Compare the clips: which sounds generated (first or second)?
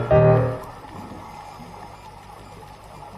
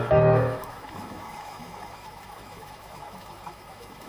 second